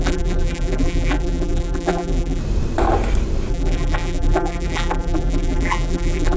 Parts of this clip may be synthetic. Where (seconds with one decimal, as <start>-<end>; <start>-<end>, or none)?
0.0-2.4; 3.5-6.4